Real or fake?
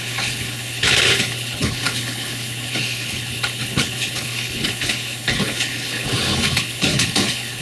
fake